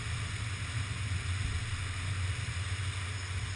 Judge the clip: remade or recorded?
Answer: recorded